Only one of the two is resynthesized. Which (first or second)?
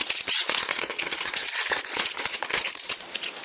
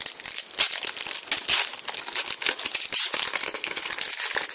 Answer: first